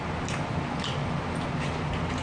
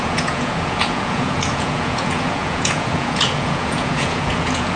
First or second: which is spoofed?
second